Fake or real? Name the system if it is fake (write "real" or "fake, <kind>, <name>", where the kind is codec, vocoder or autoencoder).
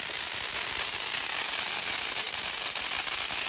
real